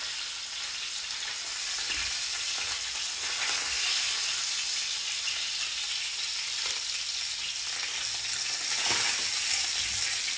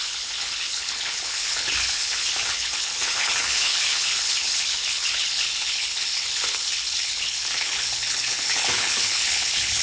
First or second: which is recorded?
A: first